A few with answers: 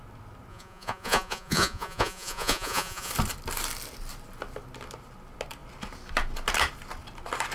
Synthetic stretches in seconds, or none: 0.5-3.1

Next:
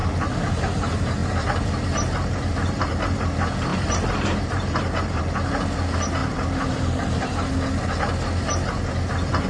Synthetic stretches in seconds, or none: 1.2-3.2; 3.7-5.2; 6.2-7.3

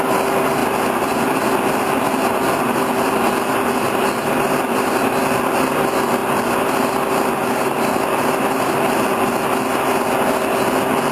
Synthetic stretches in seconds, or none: none

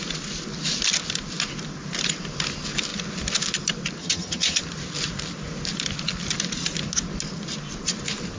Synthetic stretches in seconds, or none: 4.0-4.6